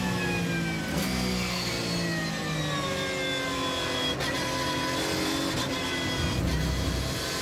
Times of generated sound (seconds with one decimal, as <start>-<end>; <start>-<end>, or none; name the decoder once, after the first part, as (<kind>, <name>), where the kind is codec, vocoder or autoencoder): 0.9-1.7 (codec, SNAC)